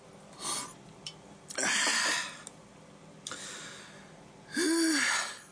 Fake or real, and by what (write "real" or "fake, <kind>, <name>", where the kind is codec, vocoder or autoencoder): real